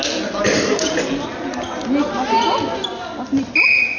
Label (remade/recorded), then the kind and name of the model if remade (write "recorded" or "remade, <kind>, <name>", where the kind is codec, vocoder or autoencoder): recorded